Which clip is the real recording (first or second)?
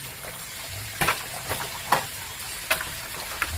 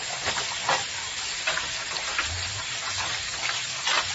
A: second